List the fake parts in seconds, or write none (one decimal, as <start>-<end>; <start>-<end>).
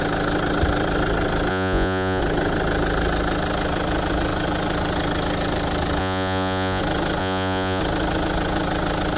1.5-2.2; 6.0-6.8; 7.2-7.8